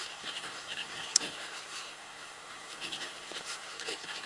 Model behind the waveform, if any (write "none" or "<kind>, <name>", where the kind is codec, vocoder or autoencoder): codec, SNAC